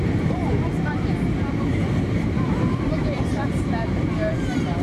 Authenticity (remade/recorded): remade